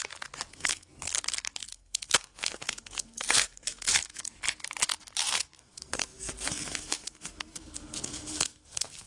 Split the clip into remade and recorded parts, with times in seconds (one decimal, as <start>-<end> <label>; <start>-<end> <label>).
0.0-0.5 recorded; 0.5-1.1 remade; 1.1-1.6 recorded; 1.6-4.4 remade; 4.4-5.2 recorded; 5.2-9.1 remade